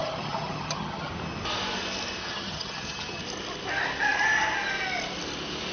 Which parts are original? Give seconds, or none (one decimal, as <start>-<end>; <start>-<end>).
1.1-2.2; 3.2-5.7